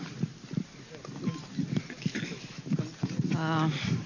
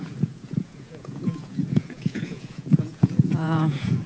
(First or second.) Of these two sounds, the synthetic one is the second